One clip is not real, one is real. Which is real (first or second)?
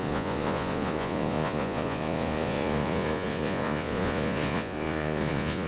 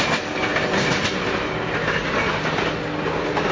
second